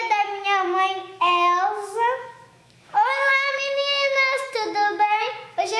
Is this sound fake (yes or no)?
yes